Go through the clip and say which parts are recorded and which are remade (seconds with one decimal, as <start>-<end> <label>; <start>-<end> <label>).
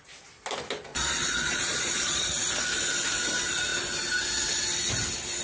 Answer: 0.0-0.9 recorded; 0.9-2.4 remade; 2.4-5.4 recorded